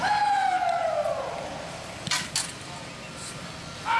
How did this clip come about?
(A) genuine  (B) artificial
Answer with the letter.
A